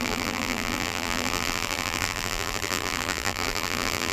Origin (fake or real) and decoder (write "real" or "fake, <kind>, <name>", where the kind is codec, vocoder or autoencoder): fake, vocoder, BigVGAN v2